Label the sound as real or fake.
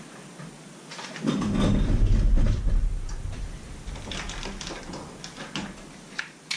real